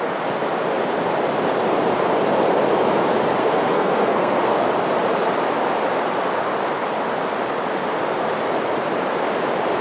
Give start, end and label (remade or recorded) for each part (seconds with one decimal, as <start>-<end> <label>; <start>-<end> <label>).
0.0-3.4 recorded; 3.4-4.6 remade; 4.6-9.8 recorded